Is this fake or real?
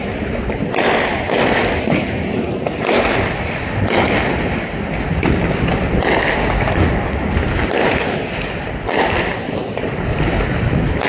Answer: real